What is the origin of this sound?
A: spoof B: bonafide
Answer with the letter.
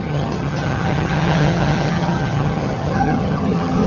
A